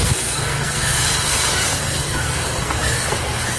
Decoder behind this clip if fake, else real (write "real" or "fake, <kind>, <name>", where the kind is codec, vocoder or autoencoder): fake, codec, SNAC